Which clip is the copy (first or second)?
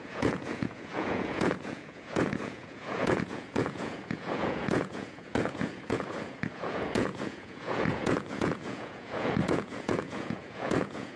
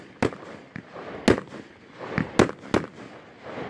first